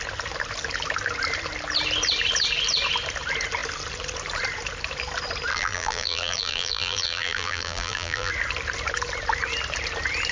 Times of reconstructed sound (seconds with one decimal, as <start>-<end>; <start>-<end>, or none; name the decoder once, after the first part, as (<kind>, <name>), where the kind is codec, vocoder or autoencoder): 5.5-8.3 (vocoder, BigVGAN v2)